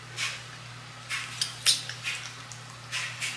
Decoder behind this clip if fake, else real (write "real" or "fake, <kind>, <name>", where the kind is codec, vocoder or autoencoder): real